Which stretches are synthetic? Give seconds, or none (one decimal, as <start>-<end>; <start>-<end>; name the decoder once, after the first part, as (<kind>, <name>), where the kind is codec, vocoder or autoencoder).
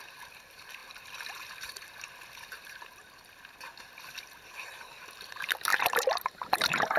0.0-3.0 (vocoder, BigVGAN v2); 4.2-7.0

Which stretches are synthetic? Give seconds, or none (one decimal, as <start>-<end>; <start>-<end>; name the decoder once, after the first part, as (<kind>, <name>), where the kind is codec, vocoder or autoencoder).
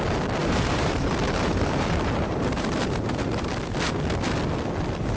0.4-3.5 (vocoder, BigVGAN v2)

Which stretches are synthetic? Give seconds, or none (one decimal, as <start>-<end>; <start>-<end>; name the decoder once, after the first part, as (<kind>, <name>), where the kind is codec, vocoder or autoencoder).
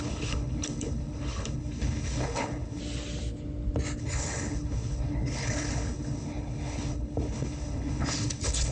0.0-2.8 (codec, HILCodec); 4.0-8.7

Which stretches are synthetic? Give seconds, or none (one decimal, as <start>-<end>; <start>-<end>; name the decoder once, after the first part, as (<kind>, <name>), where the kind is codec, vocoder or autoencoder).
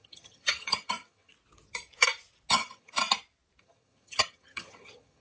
0.0-1.3 (vocoder, HiFi-GAN); 2.5-3.0; 3.6-5.2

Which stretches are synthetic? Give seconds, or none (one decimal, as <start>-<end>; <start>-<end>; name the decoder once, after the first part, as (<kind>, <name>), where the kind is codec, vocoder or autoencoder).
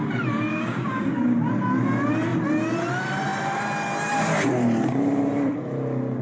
0.5-1.2 (codec, DAC)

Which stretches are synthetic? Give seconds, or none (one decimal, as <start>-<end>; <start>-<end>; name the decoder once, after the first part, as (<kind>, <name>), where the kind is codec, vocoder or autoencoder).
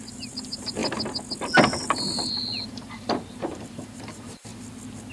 0.0-0.8 (vocoder, BigVGAN v2); 1.7-4.5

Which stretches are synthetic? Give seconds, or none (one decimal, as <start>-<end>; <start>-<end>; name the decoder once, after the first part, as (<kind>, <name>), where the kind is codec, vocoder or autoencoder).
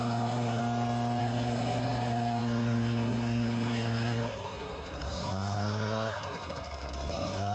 0.0-0.6 (codec, SNAC); 1.2-7.5